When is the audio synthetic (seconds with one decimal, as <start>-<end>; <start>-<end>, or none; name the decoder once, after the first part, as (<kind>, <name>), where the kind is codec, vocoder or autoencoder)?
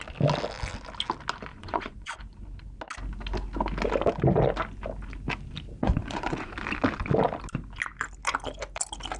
1.5-2.2 (vocoder, Vocos); 5.8-6.5